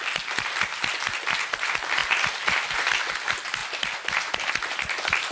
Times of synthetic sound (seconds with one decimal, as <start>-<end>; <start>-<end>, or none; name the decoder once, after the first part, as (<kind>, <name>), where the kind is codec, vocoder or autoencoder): 3.6-4.5 (vocoder, BigVGAN v2)

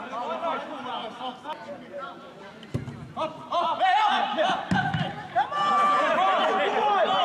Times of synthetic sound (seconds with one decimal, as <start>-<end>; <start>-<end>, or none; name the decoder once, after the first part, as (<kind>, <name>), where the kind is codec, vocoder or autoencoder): 1.0-4.2 (vocoder, BigVGAN v2)

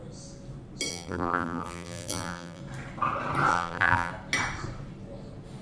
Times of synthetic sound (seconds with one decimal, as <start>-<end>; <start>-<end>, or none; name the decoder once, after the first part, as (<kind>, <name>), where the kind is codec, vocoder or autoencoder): 0.9-2.6 (vocoder, BigVGAN v2); 3.5-4.1